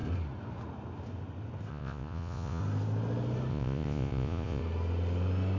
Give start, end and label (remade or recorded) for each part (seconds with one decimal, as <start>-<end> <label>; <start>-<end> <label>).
0.0-1.7 recorded; 1.7-2.6 remade; 2.6-3.5 recorded; 3.5-4.6 remade; 4.6-5.6 recorded